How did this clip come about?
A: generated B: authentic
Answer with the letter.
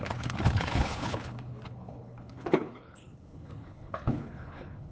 A